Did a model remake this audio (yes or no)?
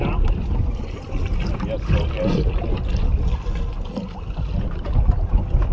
no